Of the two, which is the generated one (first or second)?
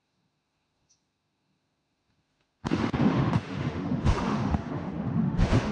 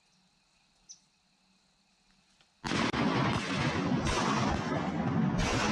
first